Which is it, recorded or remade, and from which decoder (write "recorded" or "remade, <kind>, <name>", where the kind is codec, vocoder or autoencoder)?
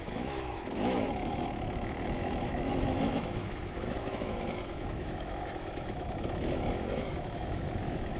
remade, autoencoder, DAC-VAE